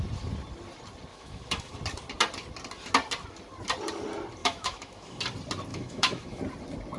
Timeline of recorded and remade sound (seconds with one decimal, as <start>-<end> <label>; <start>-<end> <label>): 0.0-1.1 recorded; 1.1-1.8 remade; 1.8-4.4 recorded; 4.4-5.2 remade; 5.2-5.7 recorded; 5.7-6.4 remade; 6.4-7.0 recorded